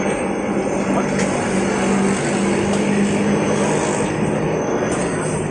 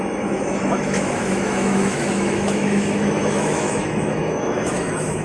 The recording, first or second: first